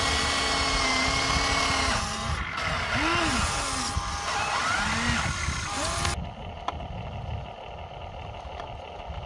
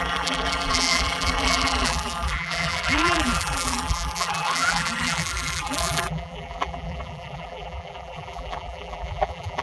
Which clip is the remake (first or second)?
second